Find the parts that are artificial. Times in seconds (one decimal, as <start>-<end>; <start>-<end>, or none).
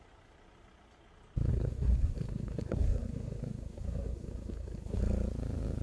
1.5-5.0